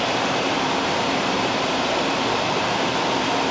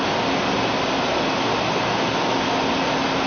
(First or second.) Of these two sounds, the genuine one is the second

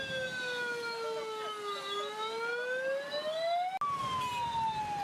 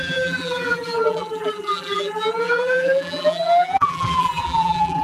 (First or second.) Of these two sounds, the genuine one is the first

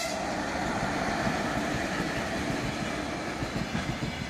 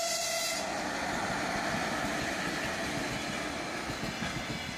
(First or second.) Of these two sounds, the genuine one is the second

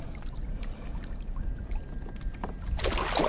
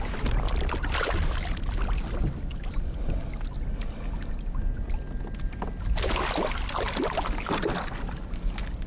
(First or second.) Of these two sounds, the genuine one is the second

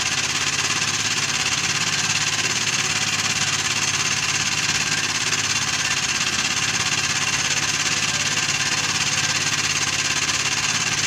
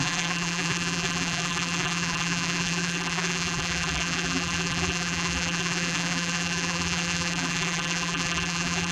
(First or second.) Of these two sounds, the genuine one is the first